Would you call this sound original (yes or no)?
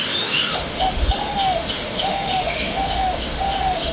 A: no